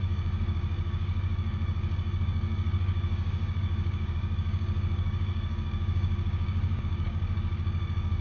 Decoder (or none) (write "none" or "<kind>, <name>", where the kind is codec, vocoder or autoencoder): codec, DAC